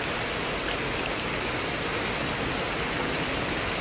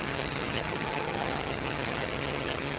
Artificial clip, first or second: second